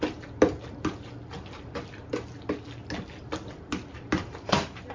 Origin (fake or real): real